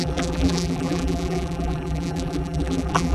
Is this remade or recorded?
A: remade